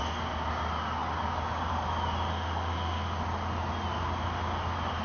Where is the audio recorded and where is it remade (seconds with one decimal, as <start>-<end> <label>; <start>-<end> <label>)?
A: 0.0-2.3 recorded; 2.3-3.2 remade; 3.2-5.0 recorded